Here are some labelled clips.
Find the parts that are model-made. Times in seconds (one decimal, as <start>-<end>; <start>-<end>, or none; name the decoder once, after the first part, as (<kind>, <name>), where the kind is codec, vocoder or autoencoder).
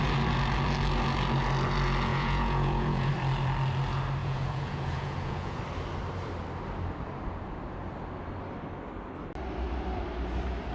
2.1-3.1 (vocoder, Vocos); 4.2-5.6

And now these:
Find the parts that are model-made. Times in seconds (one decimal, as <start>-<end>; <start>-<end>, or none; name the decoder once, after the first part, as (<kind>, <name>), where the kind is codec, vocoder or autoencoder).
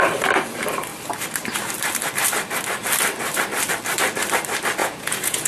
4.8-5.5 (vocoder, Vocos)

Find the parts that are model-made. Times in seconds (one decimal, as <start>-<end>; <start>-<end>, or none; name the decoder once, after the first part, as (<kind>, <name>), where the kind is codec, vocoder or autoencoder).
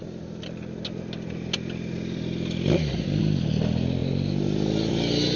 none